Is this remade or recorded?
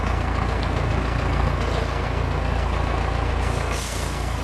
remade